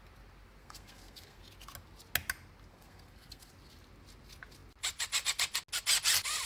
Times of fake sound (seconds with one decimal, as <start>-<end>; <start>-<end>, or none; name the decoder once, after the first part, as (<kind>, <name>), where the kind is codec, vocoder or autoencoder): 0.6-1.4 (codec, SNAC); 2.7-3.5